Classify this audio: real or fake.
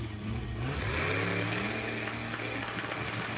real